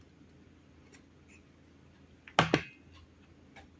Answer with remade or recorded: recorded